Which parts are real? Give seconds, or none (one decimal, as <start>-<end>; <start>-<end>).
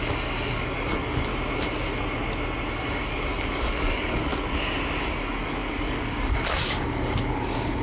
1.3-2.7; 4.3-5.0